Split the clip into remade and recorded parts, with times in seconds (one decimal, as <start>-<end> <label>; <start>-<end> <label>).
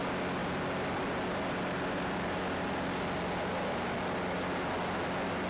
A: 0.0-5.5 recorded